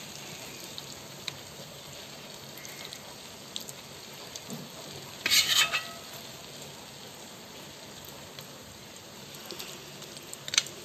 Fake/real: real